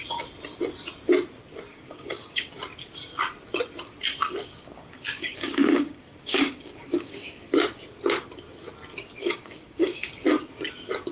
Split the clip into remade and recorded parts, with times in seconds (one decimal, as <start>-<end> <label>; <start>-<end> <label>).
0.0-1.7 recorded; 1.7-2.5 remade; 2.5-4.4 recorded; 4.4-7.8 remade; 7.8-9.2 recorded; 9.2-10.1 remade; 10.1-11.1 recorded

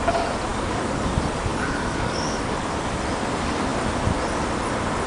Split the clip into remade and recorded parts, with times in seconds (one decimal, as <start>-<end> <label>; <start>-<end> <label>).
0.0-0.5 recorded; 0.5-1.1 remade; 1.1-1.5 recorded; 1.5-2.7 remade; 2.7-5.1 recorded